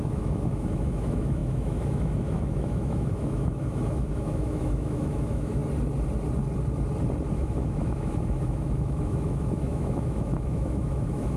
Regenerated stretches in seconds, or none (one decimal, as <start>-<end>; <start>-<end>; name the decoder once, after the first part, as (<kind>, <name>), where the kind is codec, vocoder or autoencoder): 0.0-5.6 (autoencoder, DAC-VAE); 7.3-11.4